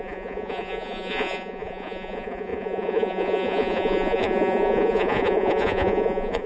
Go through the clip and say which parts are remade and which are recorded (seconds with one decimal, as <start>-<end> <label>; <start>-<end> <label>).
0.0-6.5 remade